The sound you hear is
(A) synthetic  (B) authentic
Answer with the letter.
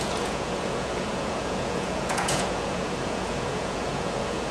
A